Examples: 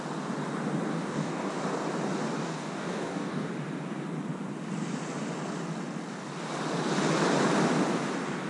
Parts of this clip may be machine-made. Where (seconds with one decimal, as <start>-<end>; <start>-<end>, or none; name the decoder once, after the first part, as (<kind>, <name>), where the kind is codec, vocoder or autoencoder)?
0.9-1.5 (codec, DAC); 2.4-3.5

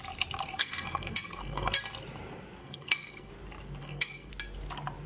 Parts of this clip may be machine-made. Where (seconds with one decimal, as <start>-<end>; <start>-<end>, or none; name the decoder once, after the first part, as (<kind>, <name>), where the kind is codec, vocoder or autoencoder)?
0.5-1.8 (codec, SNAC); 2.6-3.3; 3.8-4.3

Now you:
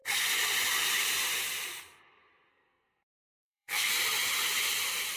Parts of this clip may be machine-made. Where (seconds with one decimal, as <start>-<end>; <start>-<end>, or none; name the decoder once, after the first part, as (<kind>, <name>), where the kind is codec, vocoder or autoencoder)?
2.5-3.9 (codec, SNAC)